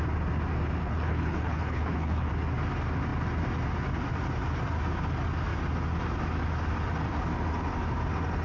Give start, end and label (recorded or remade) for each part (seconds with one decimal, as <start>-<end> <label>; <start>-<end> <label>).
0.0-0.8 recorded; 0.8-2.3 remade; 2.3-8.4 recorded